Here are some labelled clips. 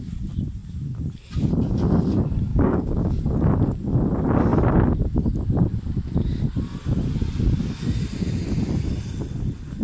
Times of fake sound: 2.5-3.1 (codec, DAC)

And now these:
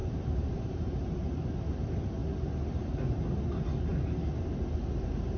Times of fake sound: 0.0-1.1 (vocoder, BigVGAN v2)

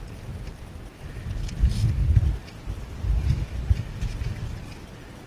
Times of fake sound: none

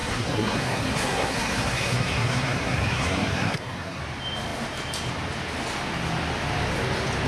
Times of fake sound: 0.0-4.0 (codec, SNAC)

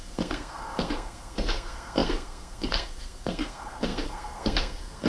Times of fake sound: 0.0-5.1 (codec, SNAC)